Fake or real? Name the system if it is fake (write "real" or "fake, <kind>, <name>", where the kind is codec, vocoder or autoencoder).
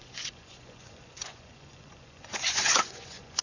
fake, vocoder, Vocos